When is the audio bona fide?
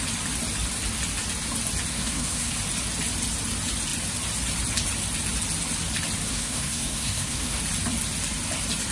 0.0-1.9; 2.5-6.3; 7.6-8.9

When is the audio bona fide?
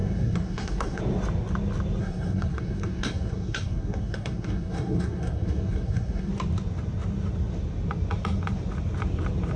1.0-2.0; 6.3-9.6